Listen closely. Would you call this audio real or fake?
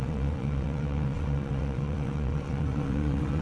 fake